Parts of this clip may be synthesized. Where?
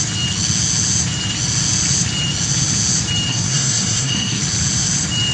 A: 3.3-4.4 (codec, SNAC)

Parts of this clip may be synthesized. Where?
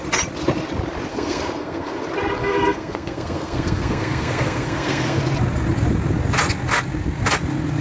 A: 1.1-2.0 (codec, SNAC); 2.4-5.2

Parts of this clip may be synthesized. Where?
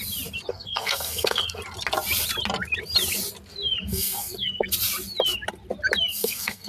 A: 0.5-1.6 (codec, SNAC); 3.9-4.7; 6.1-6.7